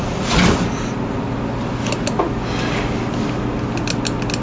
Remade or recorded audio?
recorded